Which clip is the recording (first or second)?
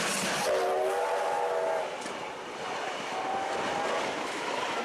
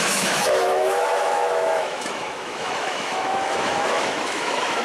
first